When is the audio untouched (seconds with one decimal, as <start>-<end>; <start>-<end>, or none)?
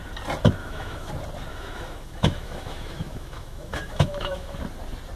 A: 0.0-0.6; 1.1-1.5; 4.6-5.2